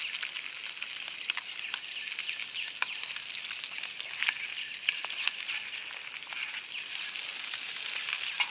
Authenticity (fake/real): real